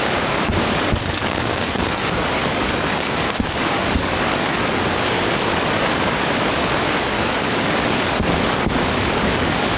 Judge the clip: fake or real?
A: fake